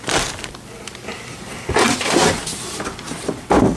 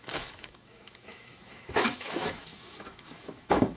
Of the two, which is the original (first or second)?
first